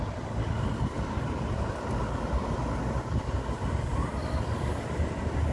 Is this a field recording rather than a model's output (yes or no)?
yes